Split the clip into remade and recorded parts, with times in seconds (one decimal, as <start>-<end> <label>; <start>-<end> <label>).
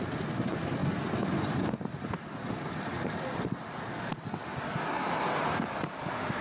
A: 0.0-6.4 recorded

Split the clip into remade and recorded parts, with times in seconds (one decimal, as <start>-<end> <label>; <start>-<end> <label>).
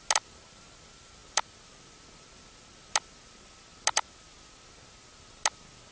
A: 0.0-5.9 recorded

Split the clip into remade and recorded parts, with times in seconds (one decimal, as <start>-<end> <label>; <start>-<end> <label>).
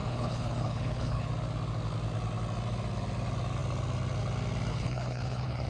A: 0.0-1.3 remade; 1.3-4.7 recorded; 4.7-5.7 remade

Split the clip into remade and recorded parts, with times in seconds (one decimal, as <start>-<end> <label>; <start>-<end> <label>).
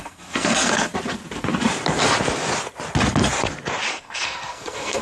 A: 0.0-0.9 remade; 0.9-3.9 recorded; 3.9-5.0 remade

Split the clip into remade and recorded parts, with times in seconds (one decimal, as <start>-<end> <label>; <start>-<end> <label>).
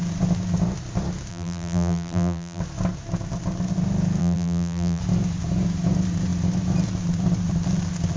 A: 0.0-1.3 recorded; 1.3-2.6 remade; 2.6-4.2 recorded; 4.2-5.0 remade; 5.0-8.2 recorded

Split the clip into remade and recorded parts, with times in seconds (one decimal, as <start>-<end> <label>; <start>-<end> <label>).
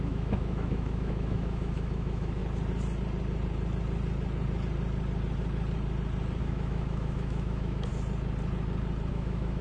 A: 0.0-2.4 remade; 2.4-6.4 recorded; 6.4-7.9 remade; 7.9-9.1 recorded; 9.1-9.6 remade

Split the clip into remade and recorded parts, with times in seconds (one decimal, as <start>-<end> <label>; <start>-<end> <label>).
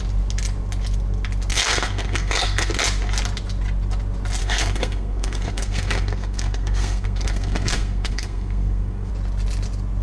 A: 0.0-1.5 recorded; 1.5-2.7 remade; 2.7-4.4 recorded; 4.4-9.1 remade; 9.1-10.0 recorded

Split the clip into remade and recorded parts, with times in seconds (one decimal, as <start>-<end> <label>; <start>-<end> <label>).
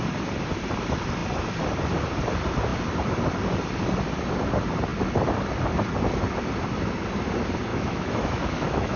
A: 0.0-7.7 recorded; 7.7-9.0 remade